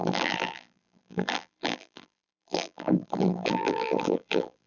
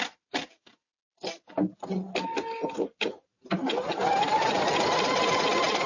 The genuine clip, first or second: second